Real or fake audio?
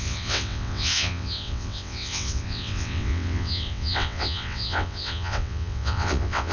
fake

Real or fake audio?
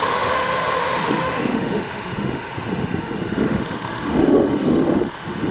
fake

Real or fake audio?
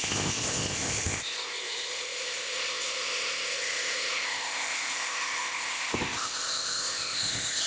fake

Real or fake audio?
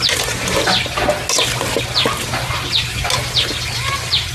real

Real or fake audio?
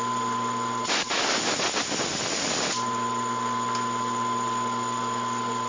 real